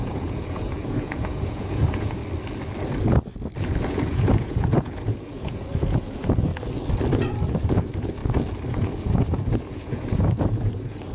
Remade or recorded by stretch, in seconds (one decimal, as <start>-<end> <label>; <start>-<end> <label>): 0.0-2.2 remade; 2.2-3.8 recorded; 3.8-6.5 remade; 6.5-7.5 recorded; 7.5-8.2 remade; 8.2-8.7 recorded; 8.7-11.1 remade